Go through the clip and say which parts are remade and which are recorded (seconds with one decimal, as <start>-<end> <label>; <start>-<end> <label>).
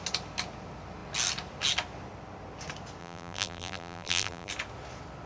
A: 0.0-3.0 recorded; 3.0-4.5 remade; 4.5-5.3 recorded